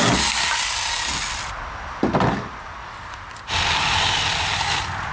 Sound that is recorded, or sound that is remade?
recorded